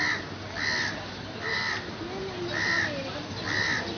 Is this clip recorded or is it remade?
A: recorded